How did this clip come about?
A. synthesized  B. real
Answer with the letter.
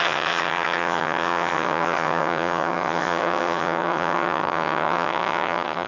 A